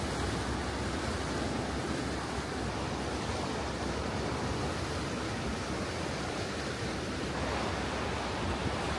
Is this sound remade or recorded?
recorded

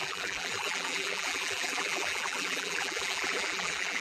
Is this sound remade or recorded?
remade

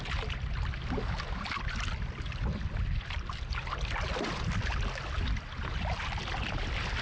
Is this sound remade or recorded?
recorded